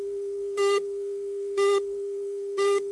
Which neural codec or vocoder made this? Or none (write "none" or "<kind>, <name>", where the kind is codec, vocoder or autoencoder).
codec, SNAC